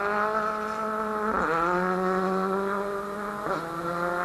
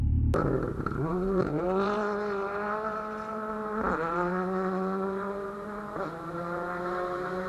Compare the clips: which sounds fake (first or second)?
second